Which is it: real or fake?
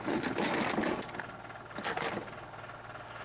real